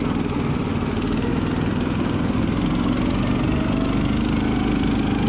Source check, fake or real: real